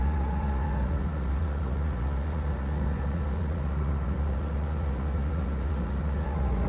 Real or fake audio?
fake